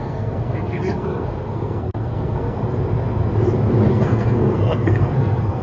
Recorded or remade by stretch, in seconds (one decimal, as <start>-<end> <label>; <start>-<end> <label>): 0.0-2.6 remade; 2.6-3.9 recorded; 3.9-5.6 remade